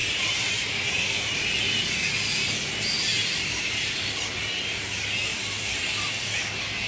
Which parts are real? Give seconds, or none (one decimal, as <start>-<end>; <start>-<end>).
1.5-3.1; 4.2-5.3; 5.8-6.9